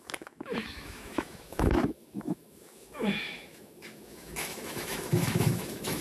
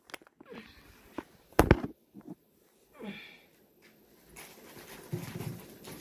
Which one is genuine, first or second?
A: second